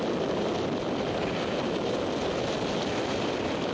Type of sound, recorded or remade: recorded